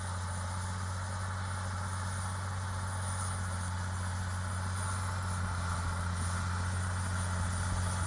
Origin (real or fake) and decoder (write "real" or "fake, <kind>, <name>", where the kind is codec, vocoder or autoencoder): real